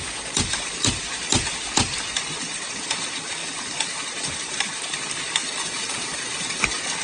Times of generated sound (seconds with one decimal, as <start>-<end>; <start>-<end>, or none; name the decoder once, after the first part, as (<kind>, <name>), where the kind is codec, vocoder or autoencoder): 3.4-5.8 (vocoder, BigVGAN v2)